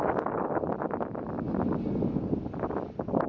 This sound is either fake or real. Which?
real